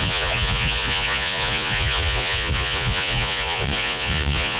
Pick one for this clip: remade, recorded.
remade